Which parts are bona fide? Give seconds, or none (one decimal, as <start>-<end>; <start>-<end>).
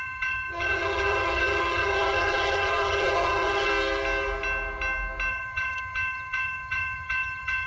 3.7-5.3